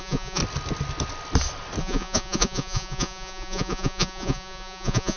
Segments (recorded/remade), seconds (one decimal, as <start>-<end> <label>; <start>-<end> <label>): 0.0-0.4 remade; 0.4-1.8 recorded; 1.8-5.2 remade